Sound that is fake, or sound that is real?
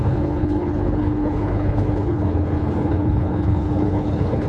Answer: fake